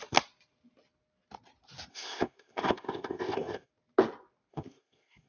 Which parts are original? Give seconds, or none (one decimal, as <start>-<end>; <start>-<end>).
0.0-1.9; 3.7-4.5